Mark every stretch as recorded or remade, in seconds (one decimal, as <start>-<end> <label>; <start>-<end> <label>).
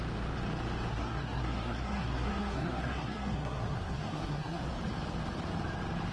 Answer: 0.0-0.9 recorded; 0.9-4.6 remade; 4.6-6.1 recorded